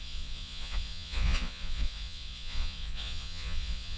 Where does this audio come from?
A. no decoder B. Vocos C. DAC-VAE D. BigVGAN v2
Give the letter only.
B